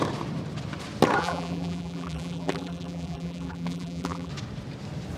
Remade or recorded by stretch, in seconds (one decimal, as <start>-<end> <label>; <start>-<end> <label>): 0.0-1.2 recorded; 1.2-4.3 remade; 4.3-5.2 recorded